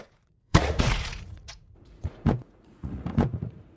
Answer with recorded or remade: remade